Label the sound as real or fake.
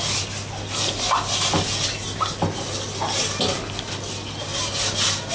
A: real